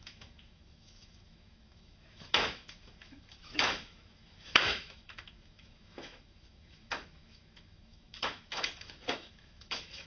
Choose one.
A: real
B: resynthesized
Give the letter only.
B